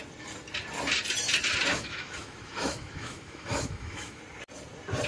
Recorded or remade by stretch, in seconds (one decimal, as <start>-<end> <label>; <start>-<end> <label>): 0.0-1.7 recorded; 1.7-4.2 remade; 4.2-5.1 recorded